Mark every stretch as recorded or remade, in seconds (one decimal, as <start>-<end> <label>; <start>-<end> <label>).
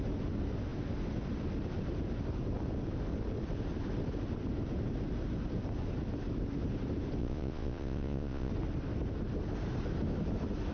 0.0-7.2 recorded; 7.2-8.5 remade; 8.5-10.7 recorded